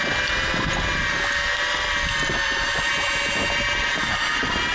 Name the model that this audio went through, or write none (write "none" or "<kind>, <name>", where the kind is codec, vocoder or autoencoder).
none